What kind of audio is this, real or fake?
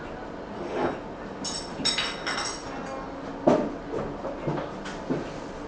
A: real